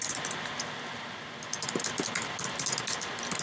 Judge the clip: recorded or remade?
recorded